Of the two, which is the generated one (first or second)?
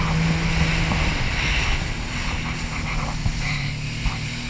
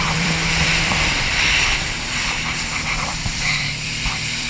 second